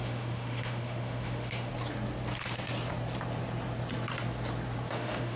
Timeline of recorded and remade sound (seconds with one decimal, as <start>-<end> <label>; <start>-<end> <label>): 0.0-1.7 remade; 1.7-4.9 recorded; 4.9-5.4 remade